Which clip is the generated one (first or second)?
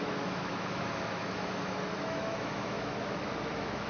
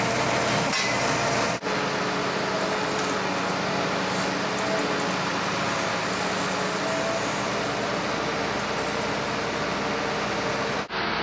first